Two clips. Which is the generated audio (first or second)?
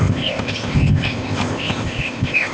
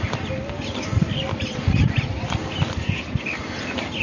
first